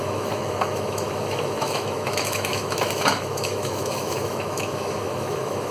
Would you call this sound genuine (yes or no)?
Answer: no